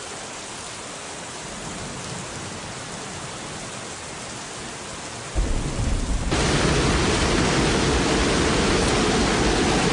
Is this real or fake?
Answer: real